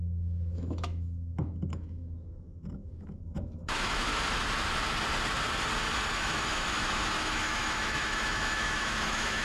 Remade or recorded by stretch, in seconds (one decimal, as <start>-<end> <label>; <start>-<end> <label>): 0.0-4.1 remade; 4.1-6.1 recorded; 6.1-9.4 remade